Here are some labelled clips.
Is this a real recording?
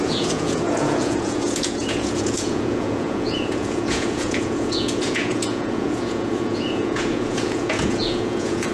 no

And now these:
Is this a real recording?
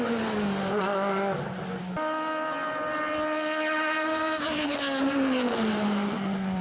yes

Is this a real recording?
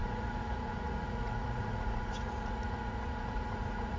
no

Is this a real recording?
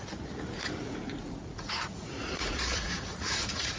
no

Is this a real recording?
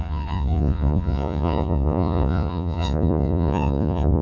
no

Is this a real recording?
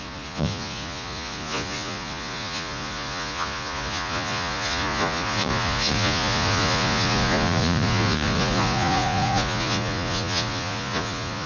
no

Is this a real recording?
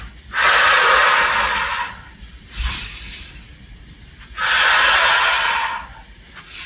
yes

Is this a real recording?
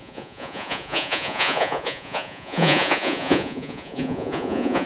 no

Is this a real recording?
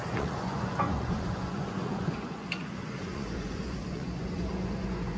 no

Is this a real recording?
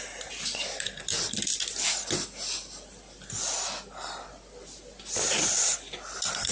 yes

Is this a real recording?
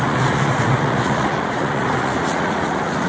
no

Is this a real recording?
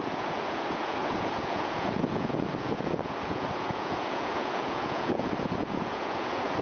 no